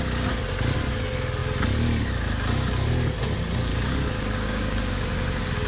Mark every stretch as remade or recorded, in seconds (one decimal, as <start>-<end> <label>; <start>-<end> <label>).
0.0-3.7 recorded; 3.7-4.9 remade; 4.9-5.7 recorded